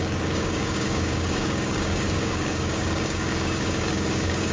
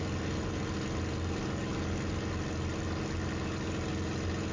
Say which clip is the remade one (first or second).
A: first